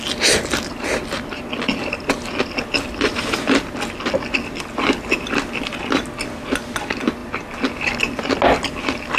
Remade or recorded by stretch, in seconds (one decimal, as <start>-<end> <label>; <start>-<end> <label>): 0.0-9.2 recorded